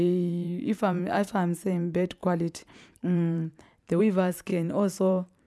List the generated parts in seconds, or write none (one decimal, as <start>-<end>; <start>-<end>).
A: 0.0-5.5